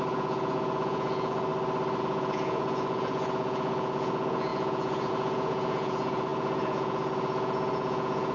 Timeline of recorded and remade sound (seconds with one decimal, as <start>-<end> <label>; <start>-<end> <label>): 0.0-1.5 remade; 1.5-2.0 recorded; 2.0-8.3 remade